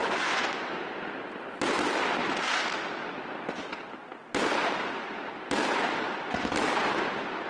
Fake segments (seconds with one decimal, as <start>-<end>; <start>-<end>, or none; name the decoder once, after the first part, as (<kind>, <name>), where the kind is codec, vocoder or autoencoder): 0.0-0.7 (vocoder, Vocos)

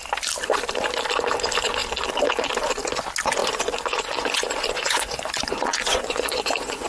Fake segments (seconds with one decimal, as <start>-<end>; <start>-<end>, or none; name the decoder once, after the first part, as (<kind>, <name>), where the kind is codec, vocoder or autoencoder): 3.4-6.9 (vocoder, Vocos)

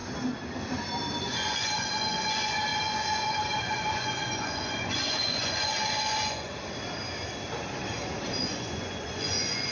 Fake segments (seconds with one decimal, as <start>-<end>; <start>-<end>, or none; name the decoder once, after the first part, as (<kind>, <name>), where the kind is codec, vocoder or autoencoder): 1.2-6.5 (vocoder, Vocos); 8.4-9.7

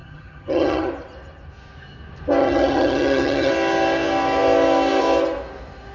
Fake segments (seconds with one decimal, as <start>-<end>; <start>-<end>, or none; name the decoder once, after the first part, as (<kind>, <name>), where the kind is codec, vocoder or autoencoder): 0.0-0.9 (vocoder, HiFi-GAN); 2.4-3.5